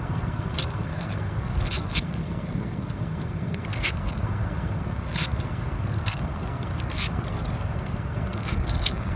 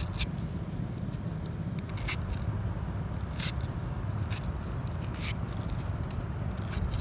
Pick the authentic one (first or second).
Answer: second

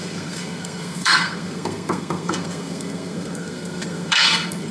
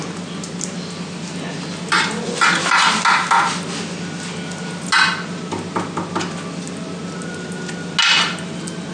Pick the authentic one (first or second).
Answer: second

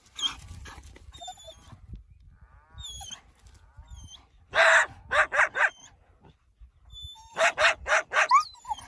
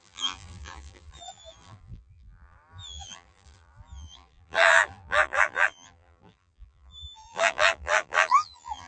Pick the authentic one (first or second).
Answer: first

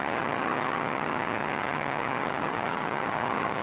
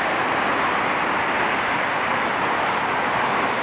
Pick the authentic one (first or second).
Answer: second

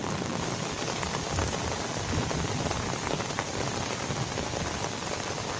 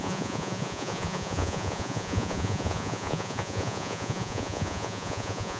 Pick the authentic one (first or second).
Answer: first